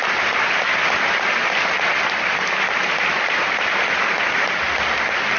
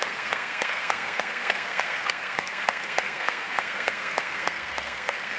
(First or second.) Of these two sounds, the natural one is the first